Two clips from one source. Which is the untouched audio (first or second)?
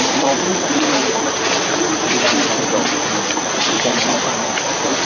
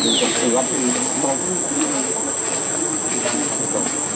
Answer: second